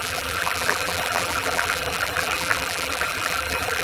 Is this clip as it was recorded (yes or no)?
no